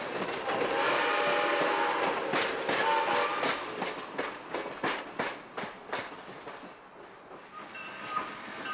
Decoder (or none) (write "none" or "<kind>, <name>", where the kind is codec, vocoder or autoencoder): none